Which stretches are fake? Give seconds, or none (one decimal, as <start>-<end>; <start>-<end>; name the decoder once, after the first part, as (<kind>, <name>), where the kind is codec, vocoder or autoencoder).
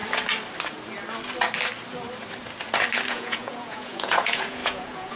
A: 3.1-5.2 (vocoder, Vocos)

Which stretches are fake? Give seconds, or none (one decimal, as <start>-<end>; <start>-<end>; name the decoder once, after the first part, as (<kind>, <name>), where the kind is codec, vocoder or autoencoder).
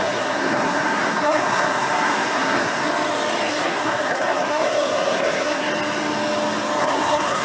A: 0.0-2.8 (codec, SNAC); 3.5-5.7; 6.8-7.4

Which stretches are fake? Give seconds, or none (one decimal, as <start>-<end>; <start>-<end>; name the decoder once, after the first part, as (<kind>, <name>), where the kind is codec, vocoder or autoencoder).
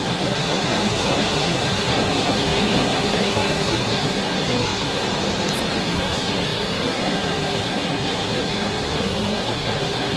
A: 0.0-5.0 (codec, SNAC); 5.8-10.2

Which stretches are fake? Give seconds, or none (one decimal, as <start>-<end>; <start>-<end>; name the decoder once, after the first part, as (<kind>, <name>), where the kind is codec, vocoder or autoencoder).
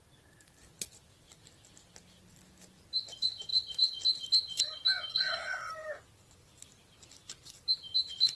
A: 5.1-5.7 (codec, SNAC)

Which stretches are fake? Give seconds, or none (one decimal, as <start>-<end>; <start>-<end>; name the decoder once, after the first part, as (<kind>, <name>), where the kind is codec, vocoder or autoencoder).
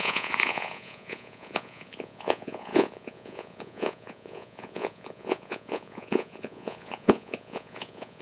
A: 0.0-8.2 (vocoder, Vocos)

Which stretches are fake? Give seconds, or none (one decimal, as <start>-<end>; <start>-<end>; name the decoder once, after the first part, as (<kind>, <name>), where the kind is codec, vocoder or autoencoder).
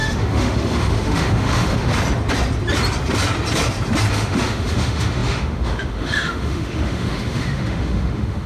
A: 0.0-1.9 (autoencoder, DAC-VAE); 4.1-8.5